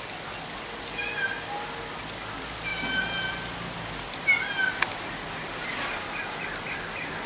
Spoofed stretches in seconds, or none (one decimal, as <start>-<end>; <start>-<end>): none